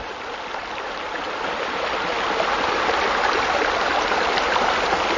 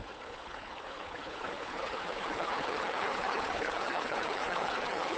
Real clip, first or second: first